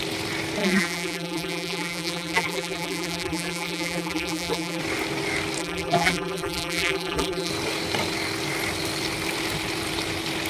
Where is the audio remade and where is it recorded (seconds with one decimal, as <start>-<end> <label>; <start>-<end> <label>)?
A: 0.0-0.6 recorded; 0.6-4.8 remade; 4.8-5.6 recorded; 5.6-7.5 remade; 7.5-10.5 recorded